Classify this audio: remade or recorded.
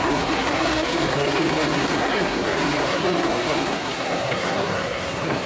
remade